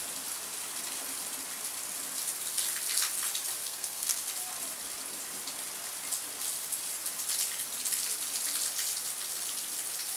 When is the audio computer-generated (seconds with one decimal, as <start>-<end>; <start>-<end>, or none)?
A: 3.6-4.2